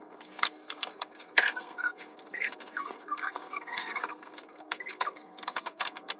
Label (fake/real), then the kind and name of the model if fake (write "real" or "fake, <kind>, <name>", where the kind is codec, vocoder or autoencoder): fake, codec, SNAC